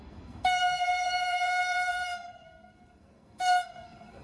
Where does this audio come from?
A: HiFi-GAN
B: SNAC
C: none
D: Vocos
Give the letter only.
B